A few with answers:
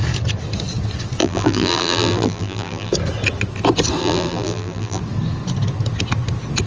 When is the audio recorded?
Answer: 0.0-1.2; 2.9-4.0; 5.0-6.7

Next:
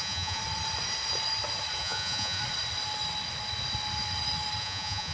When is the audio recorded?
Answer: 0.4-1.8; 2.4-4.6

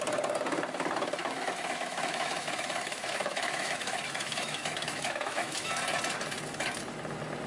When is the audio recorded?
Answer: 0.0-1.2; 5.7-7.5

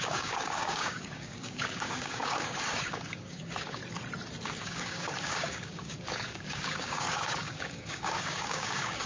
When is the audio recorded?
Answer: 3.8-4.4